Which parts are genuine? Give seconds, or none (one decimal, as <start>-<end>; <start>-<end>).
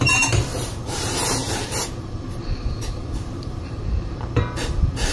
none